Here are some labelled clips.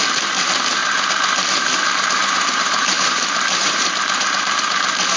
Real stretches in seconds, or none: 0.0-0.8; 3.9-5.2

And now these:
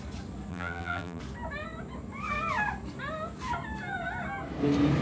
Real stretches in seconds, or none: 0.0-0.5; 1.2-5.0